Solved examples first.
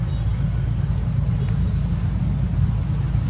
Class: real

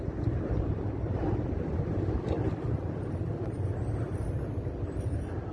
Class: real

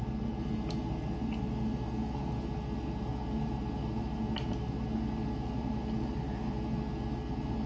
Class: real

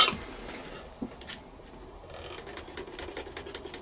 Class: real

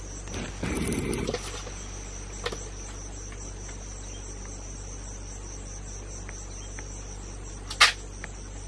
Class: real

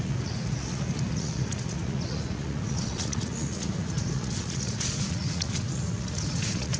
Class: fake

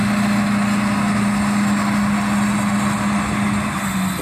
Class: real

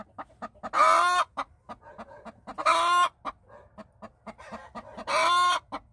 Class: real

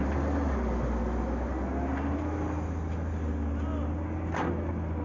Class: real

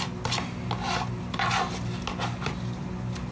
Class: real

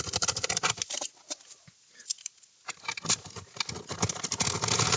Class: real